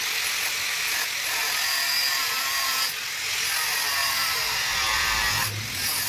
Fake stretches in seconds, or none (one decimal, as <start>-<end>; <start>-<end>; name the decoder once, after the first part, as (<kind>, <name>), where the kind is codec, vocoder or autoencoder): 2.2-2.8 (vocoder, BigVGAN v2); 4.0-4.6